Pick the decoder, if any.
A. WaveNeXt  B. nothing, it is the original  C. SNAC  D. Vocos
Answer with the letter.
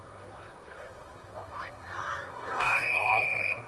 C